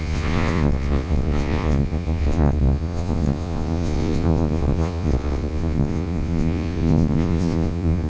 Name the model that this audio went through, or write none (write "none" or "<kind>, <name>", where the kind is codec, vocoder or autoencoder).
vocoder, Vocos